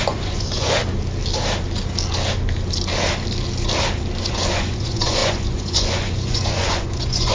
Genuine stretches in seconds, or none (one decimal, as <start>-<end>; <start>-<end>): 0.8-4.2